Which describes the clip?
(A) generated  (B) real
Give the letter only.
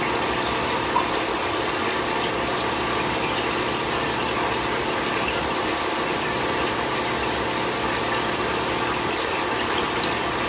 B